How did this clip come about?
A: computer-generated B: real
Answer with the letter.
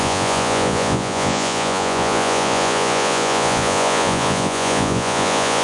A